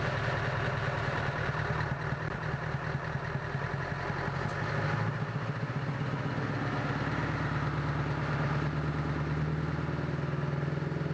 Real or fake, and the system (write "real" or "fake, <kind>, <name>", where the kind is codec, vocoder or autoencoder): real